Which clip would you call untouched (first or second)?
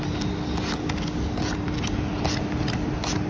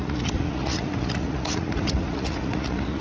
first